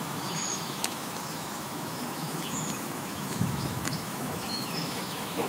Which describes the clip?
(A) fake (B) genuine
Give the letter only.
A